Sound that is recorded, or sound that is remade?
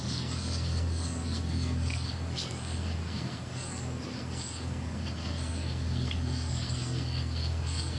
remade